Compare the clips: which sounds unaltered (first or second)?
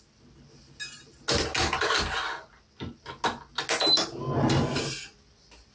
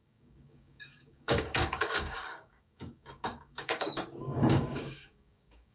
first